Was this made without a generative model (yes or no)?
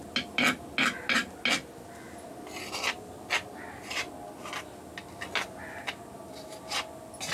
yes